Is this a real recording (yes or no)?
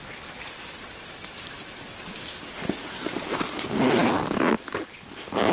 yes